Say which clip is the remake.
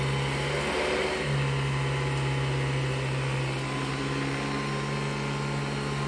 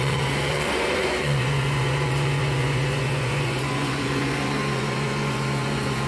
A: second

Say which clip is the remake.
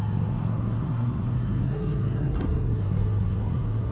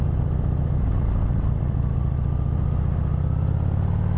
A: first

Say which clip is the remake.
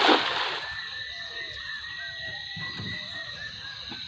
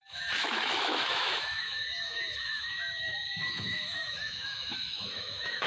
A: second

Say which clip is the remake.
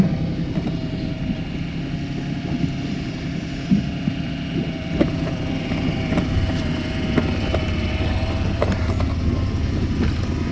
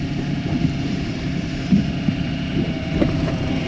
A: second